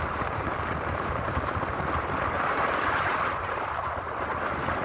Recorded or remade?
remade